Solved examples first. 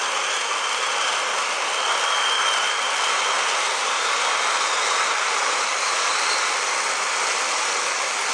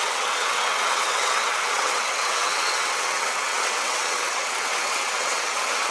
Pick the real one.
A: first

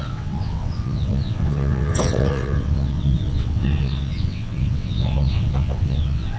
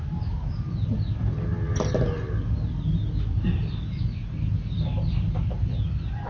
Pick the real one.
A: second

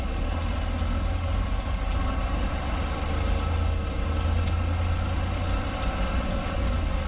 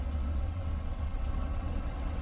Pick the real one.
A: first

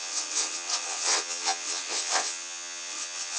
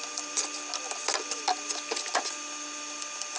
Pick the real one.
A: second